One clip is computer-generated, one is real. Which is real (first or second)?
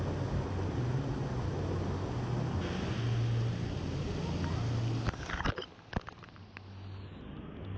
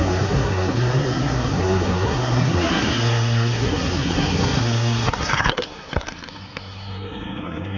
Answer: first